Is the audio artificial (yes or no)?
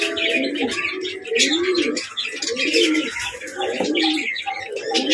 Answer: no